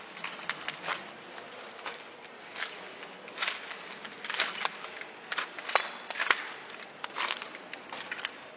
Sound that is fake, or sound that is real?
real